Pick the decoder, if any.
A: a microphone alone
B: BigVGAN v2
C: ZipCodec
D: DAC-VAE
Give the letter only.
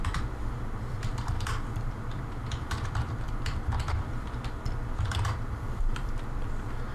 B